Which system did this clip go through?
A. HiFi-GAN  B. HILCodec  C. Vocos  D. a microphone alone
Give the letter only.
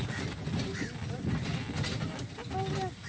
D